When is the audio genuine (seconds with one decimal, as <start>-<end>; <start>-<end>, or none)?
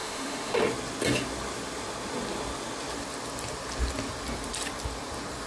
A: 0.6-5.5